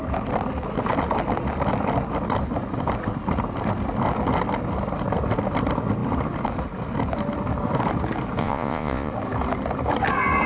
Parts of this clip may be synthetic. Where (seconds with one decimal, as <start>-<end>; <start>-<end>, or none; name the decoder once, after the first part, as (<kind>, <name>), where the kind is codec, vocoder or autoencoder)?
8.4-9.1 (vocoder, Vocos)